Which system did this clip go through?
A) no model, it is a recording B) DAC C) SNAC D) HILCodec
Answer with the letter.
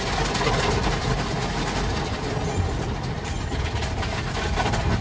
A